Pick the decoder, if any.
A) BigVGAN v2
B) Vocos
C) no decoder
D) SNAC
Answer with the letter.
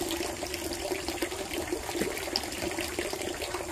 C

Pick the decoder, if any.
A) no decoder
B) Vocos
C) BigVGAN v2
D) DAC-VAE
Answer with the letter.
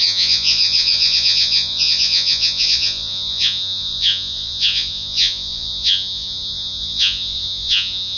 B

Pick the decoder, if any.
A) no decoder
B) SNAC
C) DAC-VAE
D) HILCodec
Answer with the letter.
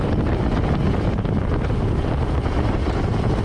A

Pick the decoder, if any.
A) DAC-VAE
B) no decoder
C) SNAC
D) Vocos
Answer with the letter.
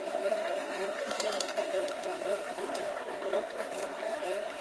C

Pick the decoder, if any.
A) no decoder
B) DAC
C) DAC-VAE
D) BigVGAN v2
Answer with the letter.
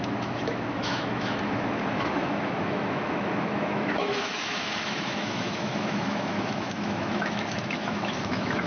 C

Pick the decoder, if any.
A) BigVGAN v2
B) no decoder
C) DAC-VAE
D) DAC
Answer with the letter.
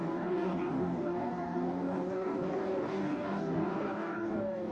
D